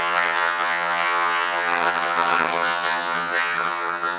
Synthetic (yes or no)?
yes